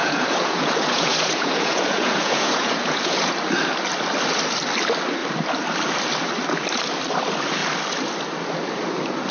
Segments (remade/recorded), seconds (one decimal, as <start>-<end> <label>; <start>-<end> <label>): 0.0-3.3 remade; 3.3-9.3 recorded

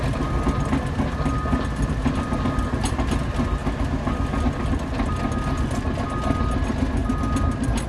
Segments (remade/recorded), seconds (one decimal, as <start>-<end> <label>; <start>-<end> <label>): 0.0-7.9 recorded

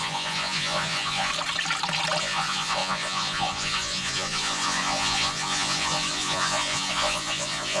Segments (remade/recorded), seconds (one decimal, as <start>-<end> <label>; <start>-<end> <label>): 0.0-1.3 remade; 1.3-2.2 recorded; 2.2-7.8 remade

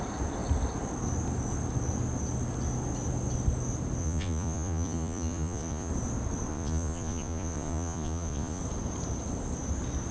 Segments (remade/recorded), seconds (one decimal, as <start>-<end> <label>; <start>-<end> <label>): 0.0-4.0 recorded; 4.0-5.9 remade; 5.9-6.5 recorded; 6.5-8.6 remade; 8.6-10.1 recorded